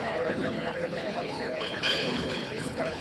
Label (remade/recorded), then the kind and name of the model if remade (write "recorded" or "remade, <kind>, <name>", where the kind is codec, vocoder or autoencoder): remade, codec, HILCodec